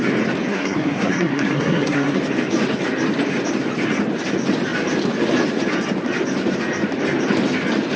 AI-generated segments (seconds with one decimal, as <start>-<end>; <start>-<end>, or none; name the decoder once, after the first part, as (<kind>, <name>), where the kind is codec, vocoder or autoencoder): 0.5-2.2 (codec, SNAC)